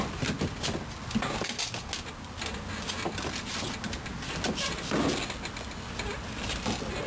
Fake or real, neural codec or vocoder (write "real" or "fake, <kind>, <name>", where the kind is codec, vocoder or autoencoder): real